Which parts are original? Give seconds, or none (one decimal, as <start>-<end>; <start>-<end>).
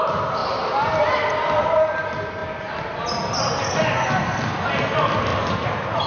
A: 0.0-0.4; 1.0-5.3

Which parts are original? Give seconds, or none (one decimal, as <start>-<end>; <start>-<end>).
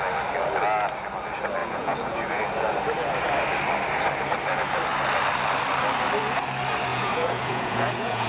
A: 0.0-1.6; 2.4-6.9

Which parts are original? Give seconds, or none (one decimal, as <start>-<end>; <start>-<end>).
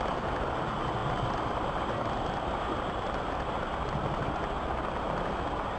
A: 0.0-5.8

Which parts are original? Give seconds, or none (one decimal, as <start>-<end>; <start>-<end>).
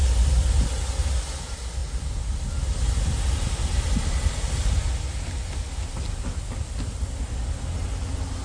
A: 0.0-8.4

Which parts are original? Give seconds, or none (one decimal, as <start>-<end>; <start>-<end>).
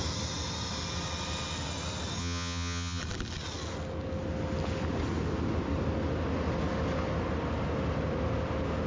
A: 0.0-2.2; 3.0-8.9